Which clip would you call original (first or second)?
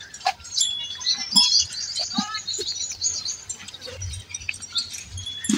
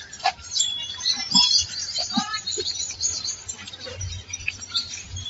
first